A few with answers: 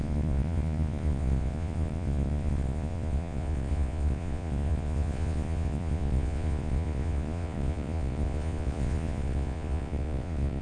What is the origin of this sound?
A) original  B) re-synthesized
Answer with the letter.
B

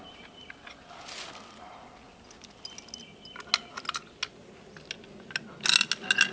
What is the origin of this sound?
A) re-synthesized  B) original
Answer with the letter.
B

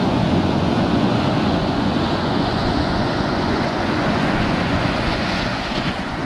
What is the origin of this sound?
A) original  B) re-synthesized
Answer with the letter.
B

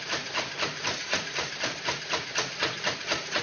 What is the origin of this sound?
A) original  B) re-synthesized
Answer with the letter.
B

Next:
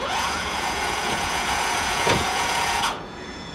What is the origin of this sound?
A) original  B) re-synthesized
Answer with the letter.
B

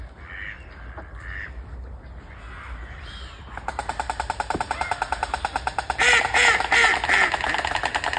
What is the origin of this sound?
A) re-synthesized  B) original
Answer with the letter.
B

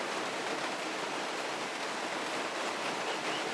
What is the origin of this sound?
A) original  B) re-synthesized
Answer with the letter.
A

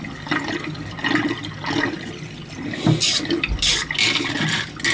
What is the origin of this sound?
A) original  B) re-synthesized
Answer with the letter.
A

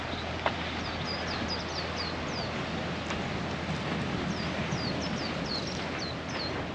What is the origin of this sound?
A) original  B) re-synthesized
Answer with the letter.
A